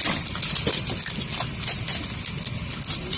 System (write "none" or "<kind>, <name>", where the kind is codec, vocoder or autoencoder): none